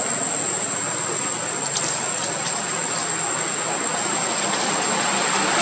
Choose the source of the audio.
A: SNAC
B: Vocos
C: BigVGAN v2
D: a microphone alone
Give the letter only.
D